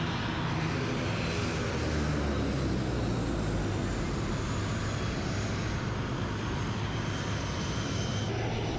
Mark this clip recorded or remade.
recorded